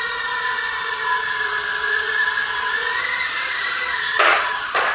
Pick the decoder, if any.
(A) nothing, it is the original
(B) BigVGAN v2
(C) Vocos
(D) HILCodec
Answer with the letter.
C